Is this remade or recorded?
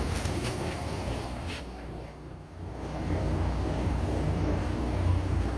remade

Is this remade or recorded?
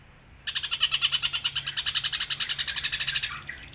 recorded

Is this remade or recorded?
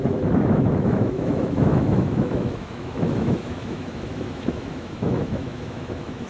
remade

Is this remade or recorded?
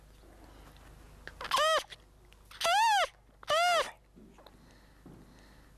recorded